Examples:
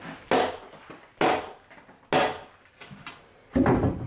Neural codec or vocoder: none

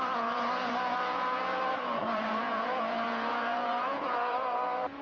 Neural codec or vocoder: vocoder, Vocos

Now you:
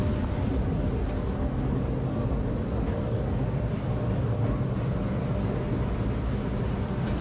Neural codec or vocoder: none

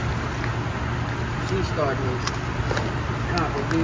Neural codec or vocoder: none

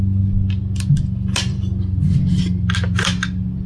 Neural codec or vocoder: none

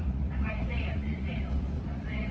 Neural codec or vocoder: vocoder, Vocos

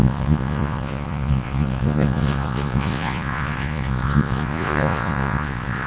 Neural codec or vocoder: vocoder, Vocos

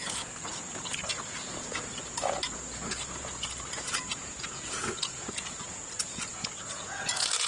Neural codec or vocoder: vocoder, Vocos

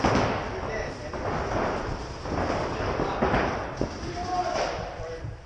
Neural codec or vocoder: none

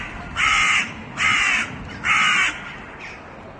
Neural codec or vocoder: none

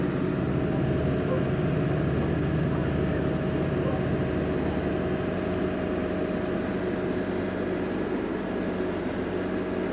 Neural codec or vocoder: none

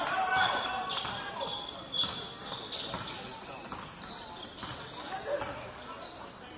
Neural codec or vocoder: none